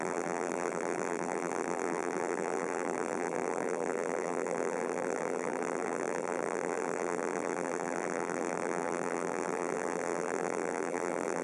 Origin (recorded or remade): remade